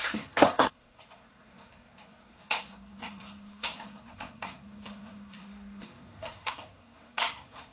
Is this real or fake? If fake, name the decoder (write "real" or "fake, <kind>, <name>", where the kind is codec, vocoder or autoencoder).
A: fake, codec, SNAC